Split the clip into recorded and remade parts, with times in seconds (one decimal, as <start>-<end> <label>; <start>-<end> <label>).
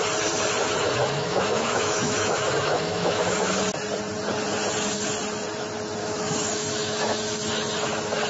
0.0-1.0 recorded; 1.0-3.6 remade; 3.6-6.0 recorded; 6.0-7.2 remade; 7.2-8.3 recorded